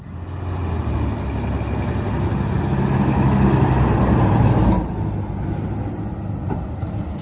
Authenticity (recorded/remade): recorded